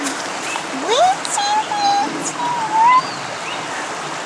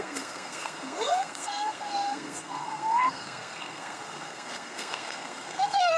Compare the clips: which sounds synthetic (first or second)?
second